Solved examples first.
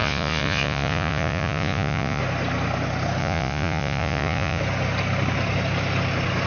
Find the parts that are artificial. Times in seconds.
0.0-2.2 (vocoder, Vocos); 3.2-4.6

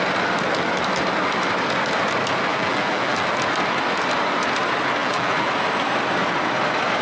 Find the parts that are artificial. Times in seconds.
2.5-3.3 (vocoder, BigVGAN v2); 5.0-5.5

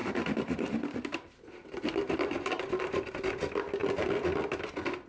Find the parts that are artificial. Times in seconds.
0.0-3.1 (vocoder, BigVGAN v2)